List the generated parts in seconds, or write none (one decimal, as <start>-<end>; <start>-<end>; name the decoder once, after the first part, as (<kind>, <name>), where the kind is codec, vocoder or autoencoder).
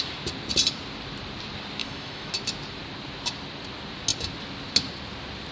1.8-2.3 (autoencoder, DAC-VAE)